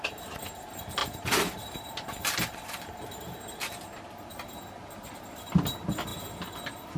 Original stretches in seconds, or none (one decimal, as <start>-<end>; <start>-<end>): 0.0-7.0

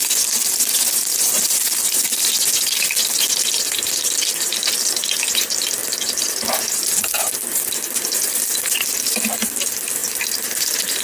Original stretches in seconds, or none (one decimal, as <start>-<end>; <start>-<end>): 0.0-0.4; 1.0-11.0

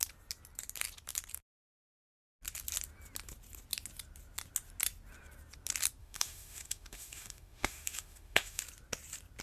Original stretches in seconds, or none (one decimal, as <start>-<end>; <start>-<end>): 0.0-6.0; 8.6-9.4

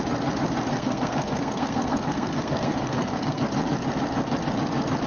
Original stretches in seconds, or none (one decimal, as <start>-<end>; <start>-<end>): 0.0-0.7; 3.4-5.1

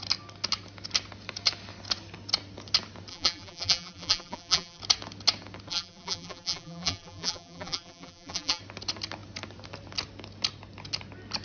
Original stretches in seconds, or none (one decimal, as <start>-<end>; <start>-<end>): 0.0-3.1; 4.8-5.7; 8.6-11.4

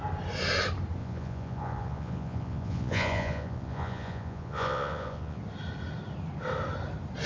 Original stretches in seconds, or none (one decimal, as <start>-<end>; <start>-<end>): 0.0-1.0; 5.4-7.3